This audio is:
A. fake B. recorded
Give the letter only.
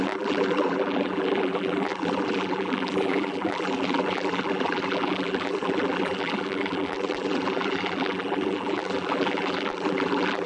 A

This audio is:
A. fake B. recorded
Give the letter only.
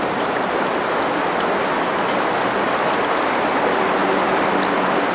B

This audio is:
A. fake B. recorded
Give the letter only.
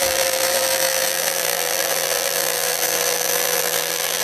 A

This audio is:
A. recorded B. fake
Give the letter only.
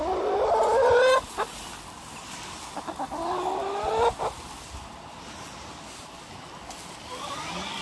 A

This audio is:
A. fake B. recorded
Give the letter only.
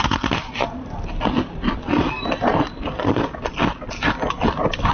B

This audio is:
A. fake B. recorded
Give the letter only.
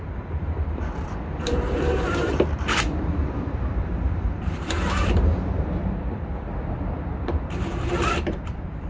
A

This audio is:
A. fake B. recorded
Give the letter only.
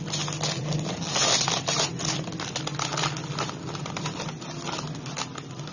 B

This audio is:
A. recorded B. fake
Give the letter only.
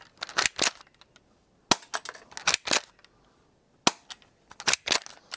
A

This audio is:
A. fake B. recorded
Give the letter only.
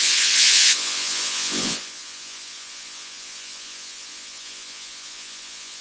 A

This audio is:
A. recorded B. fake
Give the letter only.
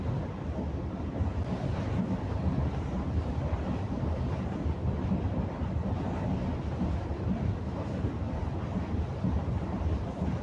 A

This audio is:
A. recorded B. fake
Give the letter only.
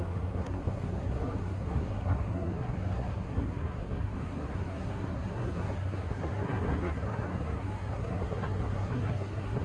B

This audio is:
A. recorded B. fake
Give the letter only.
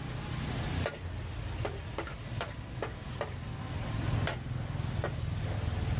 A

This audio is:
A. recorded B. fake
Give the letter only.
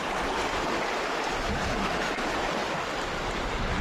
A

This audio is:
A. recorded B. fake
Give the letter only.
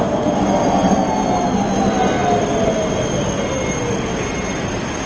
A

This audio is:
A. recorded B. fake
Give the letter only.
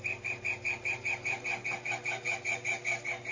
A